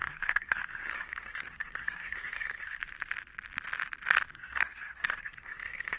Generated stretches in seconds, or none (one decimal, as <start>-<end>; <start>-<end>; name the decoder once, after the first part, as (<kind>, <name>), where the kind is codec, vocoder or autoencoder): 0.0-2.8 (codec, SNAC); 4.3-6.0